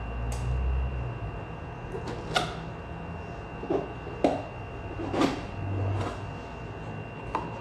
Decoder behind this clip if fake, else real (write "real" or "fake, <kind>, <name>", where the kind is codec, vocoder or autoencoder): real